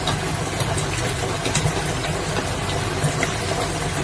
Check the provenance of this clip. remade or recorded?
recorded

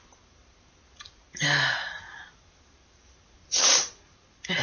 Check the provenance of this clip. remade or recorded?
remade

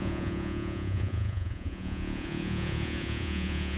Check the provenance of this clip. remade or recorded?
remade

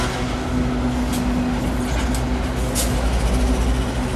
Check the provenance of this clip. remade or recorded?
recorded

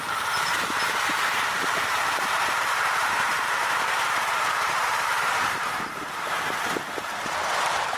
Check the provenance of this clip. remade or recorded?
remade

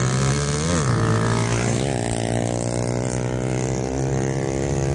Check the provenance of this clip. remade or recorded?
recorded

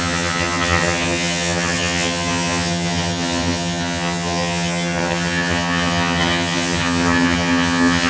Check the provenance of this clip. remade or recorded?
remade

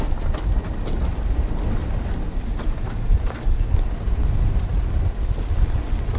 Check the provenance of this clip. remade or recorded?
recorded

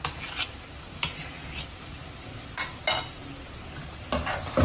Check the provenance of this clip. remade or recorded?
recorded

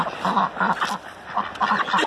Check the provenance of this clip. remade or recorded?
recorded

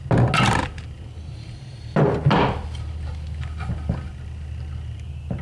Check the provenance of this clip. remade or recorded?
recorded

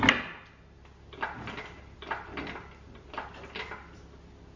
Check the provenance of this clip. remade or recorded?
recorded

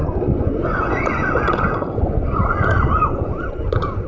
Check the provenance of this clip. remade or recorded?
remade